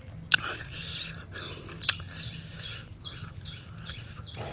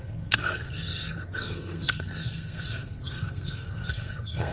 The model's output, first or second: second